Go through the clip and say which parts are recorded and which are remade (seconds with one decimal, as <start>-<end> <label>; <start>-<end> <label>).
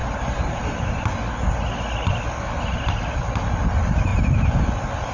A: 0.0-1.1 remade; 1.1-5.1 recorded